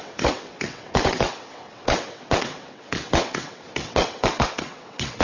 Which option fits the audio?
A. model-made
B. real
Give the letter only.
A